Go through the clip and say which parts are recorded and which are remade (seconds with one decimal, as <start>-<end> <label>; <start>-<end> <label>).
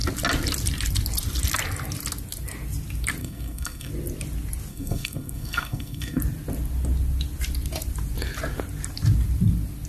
0.0-3.2 recorded; 3.2-3.9 remade; 3.9-4.7 recorded; 4.7-6.2 remade; 6.2-9.9 recorded